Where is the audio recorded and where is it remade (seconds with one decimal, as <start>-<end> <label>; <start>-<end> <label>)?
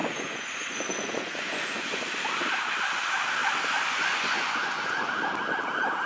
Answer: 0.0-2.0 remade; 2.0-3.4 recorded; 3.4-5.1 remade; 5.1-6.1 recorded